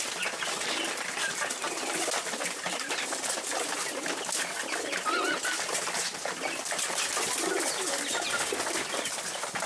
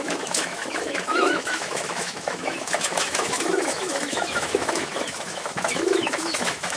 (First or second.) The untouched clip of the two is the first